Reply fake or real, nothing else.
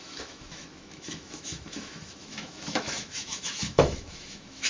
fake